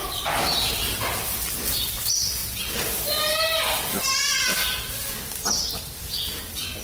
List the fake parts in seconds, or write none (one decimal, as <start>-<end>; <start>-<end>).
0.0-1.7